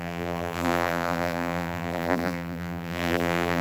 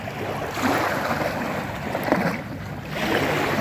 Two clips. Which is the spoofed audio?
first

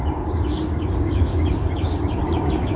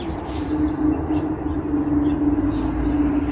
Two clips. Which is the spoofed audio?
first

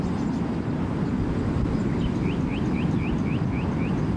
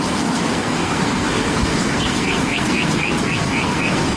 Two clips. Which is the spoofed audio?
second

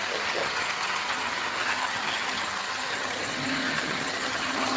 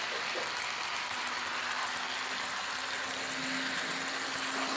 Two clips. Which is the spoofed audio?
first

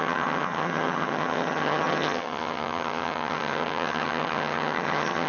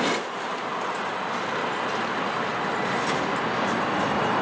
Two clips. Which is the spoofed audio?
first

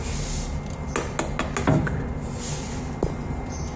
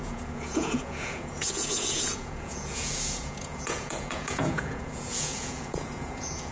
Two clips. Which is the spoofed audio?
second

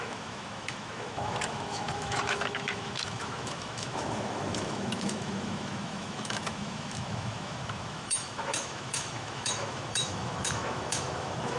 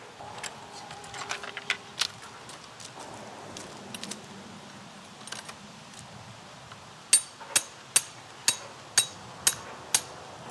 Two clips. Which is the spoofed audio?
first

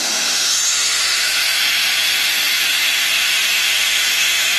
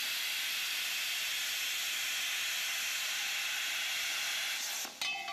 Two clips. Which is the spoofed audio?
first